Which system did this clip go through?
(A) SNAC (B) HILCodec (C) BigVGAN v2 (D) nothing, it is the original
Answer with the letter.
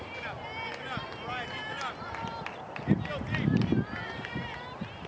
D